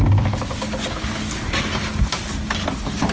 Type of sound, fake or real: real